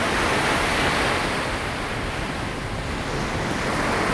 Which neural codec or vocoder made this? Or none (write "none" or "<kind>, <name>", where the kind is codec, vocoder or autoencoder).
none